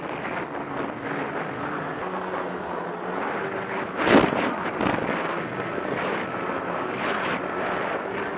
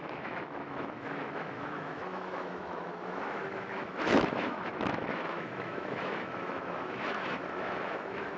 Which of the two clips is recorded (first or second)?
first